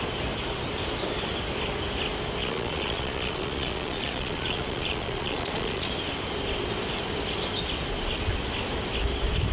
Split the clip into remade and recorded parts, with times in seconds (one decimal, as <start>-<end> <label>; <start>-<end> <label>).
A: 0.0-2.4 recorded; 2.4-5.9 remade; 5.9-9.5 recorded

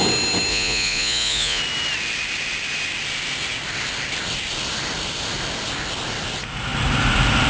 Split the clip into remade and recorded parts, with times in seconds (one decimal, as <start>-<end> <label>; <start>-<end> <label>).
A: 0.0-0.5 recorded; 0.5-1.6 remade; 1.6-7.5 recorded

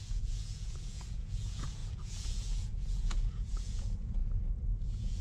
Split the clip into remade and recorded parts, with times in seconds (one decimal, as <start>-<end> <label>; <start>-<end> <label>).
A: 0.0-5.2 remade

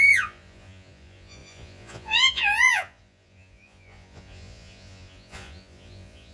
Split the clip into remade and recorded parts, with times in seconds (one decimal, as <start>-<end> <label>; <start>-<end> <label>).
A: 0.0-6.3 remade

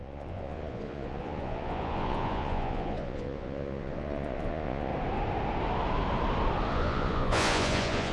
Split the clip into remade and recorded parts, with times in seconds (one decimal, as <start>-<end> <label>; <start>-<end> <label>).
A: 0.0-4.9 remade; 4.9-6.7 recorded; 6.7-8.1 remade

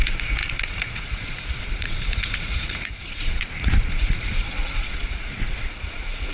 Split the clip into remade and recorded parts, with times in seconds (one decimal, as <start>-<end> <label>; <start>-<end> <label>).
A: 0.0-6.3 remade

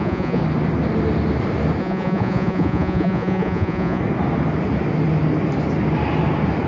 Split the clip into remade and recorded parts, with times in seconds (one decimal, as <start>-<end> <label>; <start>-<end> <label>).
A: 0.0-0.4 remade; 0.4-1.8 recorded; 1.8-4.0 remade; 4.0-6.7 recorded